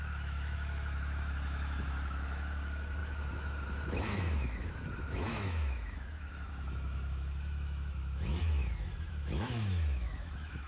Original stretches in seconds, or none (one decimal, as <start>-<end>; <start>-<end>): none